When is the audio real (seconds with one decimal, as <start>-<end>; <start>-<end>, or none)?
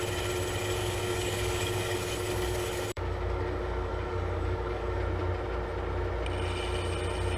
0.0-0.8; 5.0-7.4